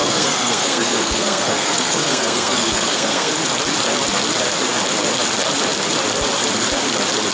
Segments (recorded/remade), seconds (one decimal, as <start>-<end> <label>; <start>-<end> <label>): 0.0-3.3 remade; 3.3-7.3 recorded